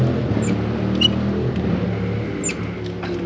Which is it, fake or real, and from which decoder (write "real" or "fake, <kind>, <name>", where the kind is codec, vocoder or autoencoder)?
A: real